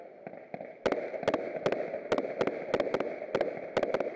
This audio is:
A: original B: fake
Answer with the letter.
A